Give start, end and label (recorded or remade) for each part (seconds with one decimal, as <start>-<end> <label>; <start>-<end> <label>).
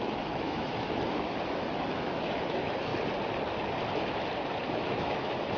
0.0-2.9 remade; 2.9-4.7 recorded; 4.7-5.6 remade